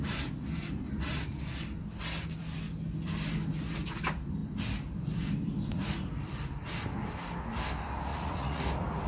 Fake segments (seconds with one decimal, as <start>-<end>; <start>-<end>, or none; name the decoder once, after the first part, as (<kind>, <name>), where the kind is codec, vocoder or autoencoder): 8.1-8.6 (vocoder, Vocos)